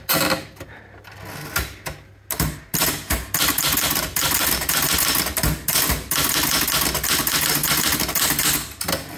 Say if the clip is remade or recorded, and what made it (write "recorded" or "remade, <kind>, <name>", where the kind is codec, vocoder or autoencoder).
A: recorded